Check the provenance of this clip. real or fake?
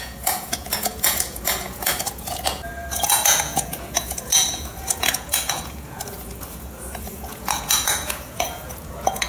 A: fake